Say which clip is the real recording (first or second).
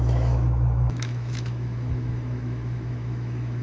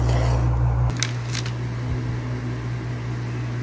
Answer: second